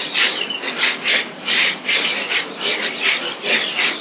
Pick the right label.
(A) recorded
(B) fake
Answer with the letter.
A